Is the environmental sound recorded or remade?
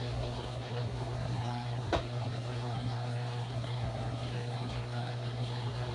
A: remade